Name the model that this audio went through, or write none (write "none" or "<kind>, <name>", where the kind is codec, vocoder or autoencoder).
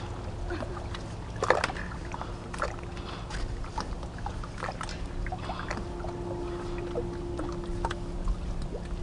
none